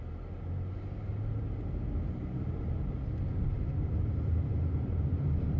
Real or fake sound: real